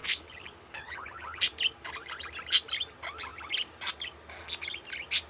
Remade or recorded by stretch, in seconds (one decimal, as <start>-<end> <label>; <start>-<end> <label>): 0.0-1.4 remade; 1.4-5.3 recorded